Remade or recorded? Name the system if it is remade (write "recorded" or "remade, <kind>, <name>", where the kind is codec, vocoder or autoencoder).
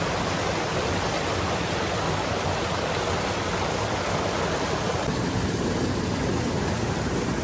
recorded